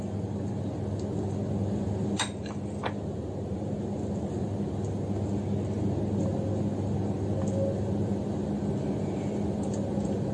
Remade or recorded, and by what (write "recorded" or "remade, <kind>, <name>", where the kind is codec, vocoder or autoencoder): recorded